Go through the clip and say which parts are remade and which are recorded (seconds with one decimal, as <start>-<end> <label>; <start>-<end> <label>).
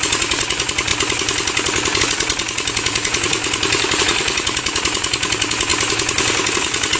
0.0-0.9 remade; 0.9-2.0 recorded; 2.0-3.4 remade; 3.4-4.0 recorded; 4.0-5.7 remade; 5.7-6.5 recorded; 6.5-7.0 remade